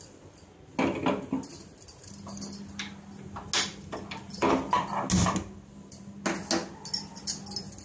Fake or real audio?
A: real